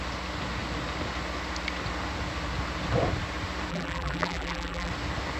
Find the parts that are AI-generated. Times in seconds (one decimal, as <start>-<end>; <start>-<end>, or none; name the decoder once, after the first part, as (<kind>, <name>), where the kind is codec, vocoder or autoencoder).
3.7-4.9 (vocoder, BigVGAN v2)